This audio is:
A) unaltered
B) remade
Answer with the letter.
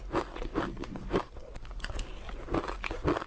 A